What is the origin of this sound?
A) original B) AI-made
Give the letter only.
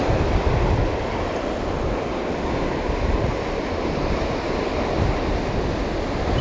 A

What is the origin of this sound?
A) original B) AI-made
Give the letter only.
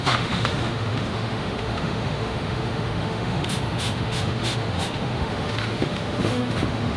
B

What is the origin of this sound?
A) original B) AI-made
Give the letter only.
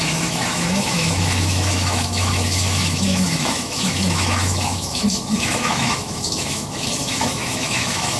B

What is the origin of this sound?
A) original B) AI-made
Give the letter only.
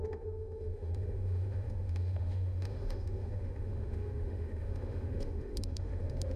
B